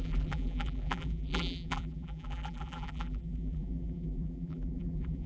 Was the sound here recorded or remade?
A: remade